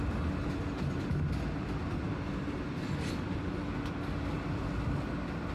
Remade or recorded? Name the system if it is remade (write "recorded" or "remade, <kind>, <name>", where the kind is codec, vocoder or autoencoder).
recorded